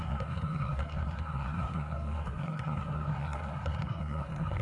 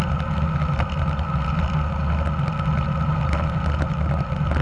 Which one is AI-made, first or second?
first